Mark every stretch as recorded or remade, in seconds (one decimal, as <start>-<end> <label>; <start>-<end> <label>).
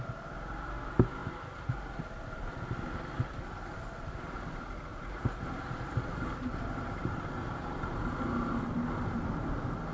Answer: 0.0-1.2 recorded; 1.2-1.9 remade; 1.9-4.9 recorded; 4.9-8.0 remade; 8.0-9.9 recorded